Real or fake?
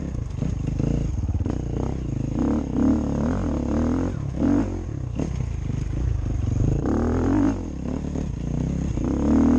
real